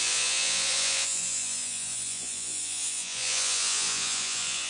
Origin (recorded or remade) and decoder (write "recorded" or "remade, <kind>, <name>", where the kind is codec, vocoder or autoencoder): remade, vocoder, Vocos